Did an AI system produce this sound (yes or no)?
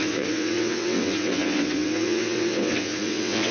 yes